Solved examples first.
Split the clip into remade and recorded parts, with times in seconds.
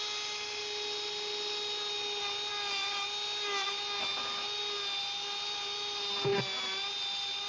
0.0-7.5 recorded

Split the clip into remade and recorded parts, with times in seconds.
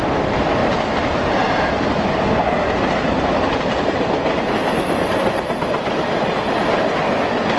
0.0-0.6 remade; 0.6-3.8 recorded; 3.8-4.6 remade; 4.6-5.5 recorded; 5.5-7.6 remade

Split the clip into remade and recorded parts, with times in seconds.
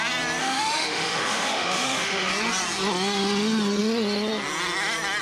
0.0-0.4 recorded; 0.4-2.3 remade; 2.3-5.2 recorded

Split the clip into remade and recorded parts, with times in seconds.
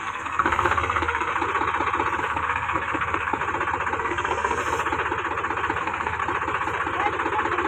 0.0-1.3 remade; 1.3-2.2 recorded; 2.2-3.4 remade; 3.4-4.0 recorded; 4.0-4.6 remade; 4.6-5.8 recorded; 5.8-6.2 remade; 6.2-7.7 recorded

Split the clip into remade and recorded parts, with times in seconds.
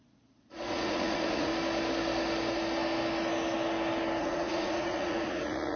0.0-1.5 remade; 1.5-4.2 recorded; 4.2-5.8 remade